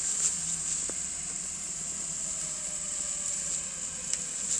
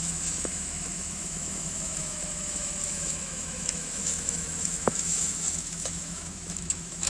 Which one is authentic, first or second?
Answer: first